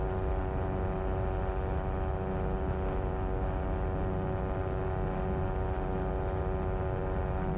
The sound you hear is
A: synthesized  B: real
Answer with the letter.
B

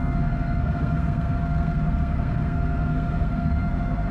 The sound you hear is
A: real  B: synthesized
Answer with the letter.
B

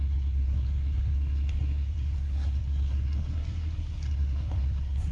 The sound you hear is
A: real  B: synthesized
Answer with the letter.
B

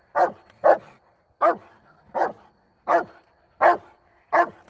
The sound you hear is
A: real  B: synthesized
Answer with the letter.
A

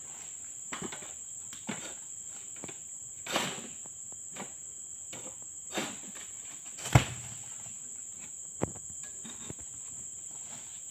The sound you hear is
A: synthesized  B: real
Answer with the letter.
B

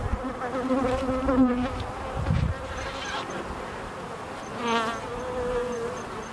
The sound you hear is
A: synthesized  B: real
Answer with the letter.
B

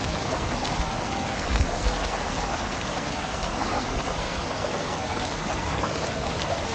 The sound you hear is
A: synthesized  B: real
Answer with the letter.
A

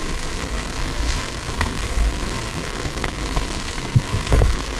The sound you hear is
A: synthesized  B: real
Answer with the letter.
A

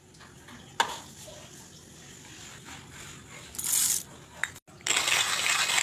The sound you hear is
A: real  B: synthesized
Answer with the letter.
A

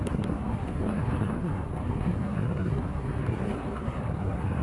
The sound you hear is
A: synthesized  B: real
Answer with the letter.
A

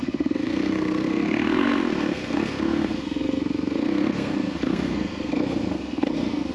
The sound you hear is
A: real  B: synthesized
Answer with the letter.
B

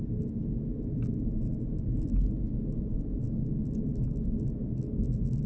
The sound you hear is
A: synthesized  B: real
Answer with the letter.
B